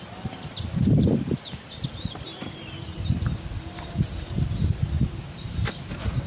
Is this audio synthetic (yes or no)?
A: yes